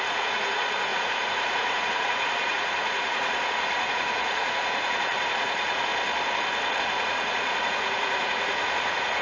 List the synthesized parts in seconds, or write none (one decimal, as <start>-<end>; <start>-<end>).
0.0-5.9; 6.8-9.2